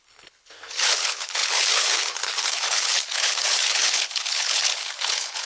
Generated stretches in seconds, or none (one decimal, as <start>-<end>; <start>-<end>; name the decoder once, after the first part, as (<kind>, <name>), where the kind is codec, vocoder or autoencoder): 0.0-5.5 (codec, HILCodec)